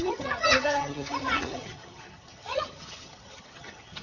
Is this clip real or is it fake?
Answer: fake